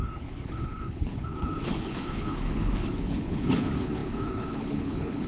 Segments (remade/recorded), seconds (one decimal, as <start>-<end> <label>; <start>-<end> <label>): 0.0-5.3 remade